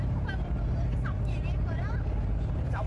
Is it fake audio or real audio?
fake